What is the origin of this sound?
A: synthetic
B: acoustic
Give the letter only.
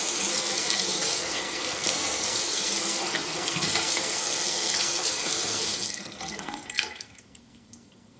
A